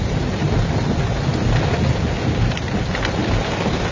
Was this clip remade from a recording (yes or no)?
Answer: no